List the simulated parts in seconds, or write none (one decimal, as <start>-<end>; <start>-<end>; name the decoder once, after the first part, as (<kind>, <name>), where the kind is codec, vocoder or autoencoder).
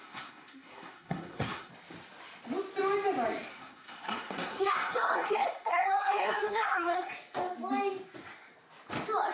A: 0.0-1.7 (codec, SNAC); 3.5-7.1